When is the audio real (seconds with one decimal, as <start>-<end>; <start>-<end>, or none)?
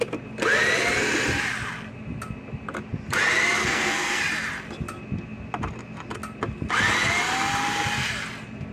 0.0-3.6; 4.2-8.7